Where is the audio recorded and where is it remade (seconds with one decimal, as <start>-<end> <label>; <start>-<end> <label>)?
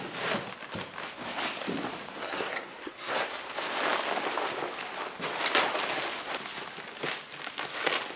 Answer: 0.0-2.2 recorded; 2.2-3.3 remade; 3.3-8.2 recorded